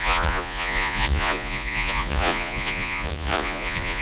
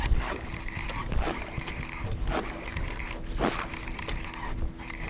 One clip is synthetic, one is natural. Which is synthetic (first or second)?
first